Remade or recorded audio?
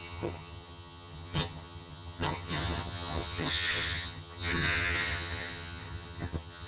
remade